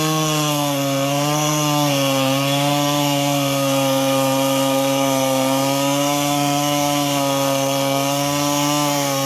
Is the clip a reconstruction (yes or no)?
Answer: yes